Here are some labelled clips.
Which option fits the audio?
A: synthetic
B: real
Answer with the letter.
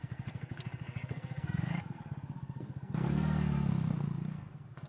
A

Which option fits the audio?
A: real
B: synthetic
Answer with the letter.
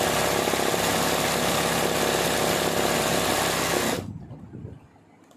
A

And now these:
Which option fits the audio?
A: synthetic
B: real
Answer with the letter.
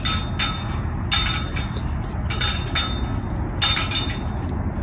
B